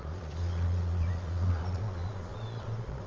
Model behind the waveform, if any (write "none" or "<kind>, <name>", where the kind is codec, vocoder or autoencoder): vocoder, Vocos